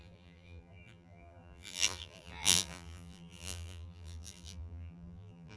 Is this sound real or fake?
fake